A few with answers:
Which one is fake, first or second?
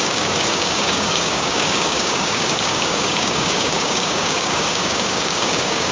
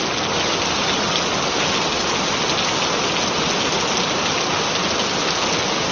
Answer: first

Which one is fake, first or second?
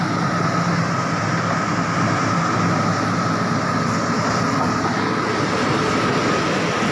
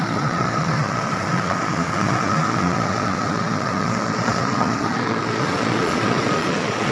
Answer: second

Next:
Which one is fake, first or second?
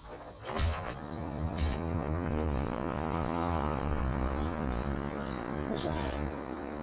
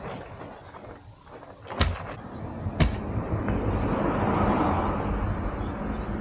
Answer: first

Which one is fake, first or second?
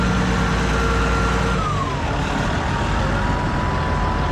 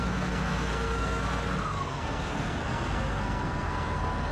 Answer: second